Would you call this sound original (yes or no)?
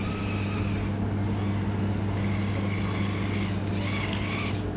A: yes